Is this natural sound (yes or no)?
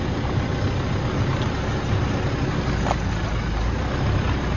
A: yes